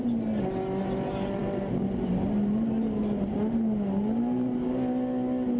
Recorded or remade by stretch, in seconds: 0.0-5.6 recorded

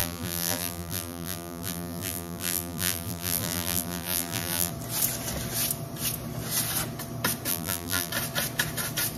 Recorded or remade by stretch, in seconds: 0.0-4.7 remade; 4.7-7.5 recorded; 7.5-8.1 remade; 8.1-9.2 recorded

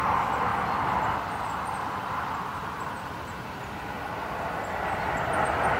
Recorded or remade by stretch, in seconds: 0.0-5.8 recorded

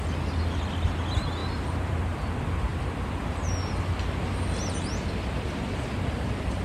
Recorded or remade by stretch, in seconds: 0.0-1.4 recorded; 1.4-2.0 remade; 2.0-2.7 recorded; 2.7-3.8 remade; 3.8-6.6 recorded

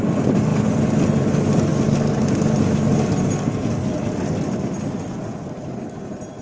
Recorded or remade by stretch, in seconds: 0.0-6.4 recorded

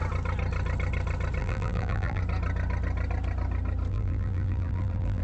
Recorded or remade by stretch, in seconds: 0.0-1.4 recorded; 1.4-2.2 remade; 2.2-3.9 recorded; 3.9-5.2 remade

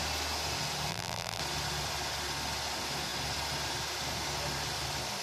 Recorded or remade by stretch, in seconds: 0.0-0.9 recorded; 0.9-1.4 remade; 1.4-5.2 recorded

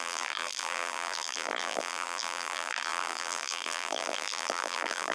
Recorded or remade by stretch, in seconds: 0.0-5.1 remade